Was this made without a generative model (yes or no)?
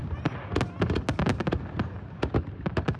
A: yes